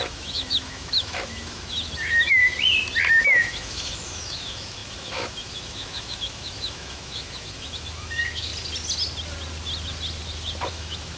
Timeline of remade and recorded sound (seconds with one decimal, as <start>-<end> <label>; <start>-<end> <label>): 0.0-2.4 remade; 2.4-3.1 recorded; 3.1-8.5 remade; 8.5-10.7 recorded; 10.7-11.2 remade